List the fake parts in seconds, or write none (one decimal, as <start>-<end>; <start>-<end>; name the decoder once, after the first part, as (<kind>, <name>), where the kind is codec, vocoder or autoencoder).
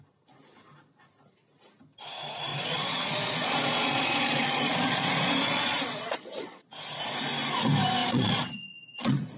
2.5-6.7 (vocoder, Vocos); 8.0-9.4